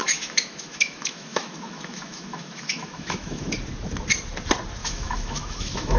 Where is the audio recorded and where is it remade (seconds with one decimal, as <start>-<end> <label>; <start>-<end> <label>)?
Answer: 0.0-3.5 remade; 3.5-4.8 recorded; 4.8-6.0 remade